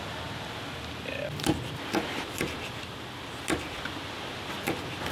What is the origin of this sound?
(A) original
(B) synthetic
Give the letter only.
A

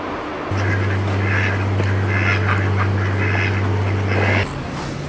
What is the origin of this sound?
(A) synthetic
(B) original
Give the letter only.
B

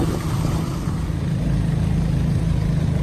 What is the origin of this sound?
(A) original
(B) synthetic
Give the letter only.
A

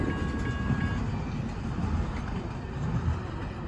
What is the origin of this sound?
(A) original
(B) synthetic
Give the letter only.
A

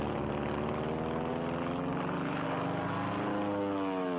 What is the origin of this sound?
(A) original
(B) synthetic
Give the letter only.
A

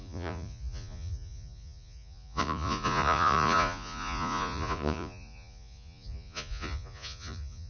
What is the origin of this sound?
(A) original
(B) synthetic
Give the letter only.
B